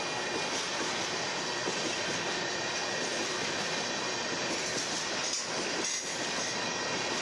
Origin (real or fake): real